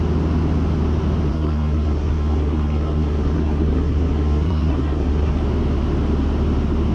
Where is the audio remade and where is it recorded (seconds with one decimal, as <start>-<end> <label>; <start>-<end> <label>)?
0.0-1.3 recorded; 1.3-5.4 remade; 5.4-6.9 recorded